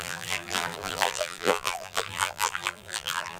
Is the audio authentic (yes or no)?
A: no